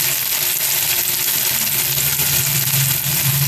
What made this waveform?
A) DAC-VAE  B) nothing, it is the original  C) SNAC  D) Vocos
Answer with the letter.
B